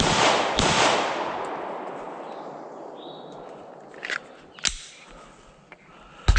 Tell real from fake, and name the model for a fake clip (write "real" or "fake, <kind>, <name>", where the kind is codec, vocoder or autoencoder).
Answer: real